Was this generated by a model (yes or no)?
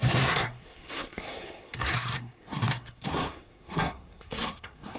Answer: yes